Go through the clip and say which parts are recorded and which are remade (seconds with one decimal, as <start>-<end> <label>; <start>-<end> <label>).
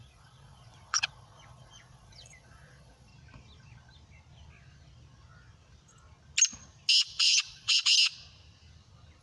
0.0-3.1 remade; 3.1-7.0 recorded; 7.0-7.9 remade; 7.9-9.2 recorded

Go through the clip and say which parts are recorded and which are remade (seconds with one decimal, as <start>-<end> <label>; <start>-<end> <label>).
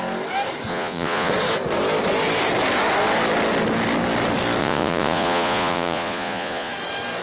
0.0-0.7 recorded; 0.7-1.3 remade; 1.3-4.6 recorded; 4.6-6.7 remade; 6.7-7.2 recorded